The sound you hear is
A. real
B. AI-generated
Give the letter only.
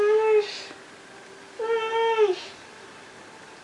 A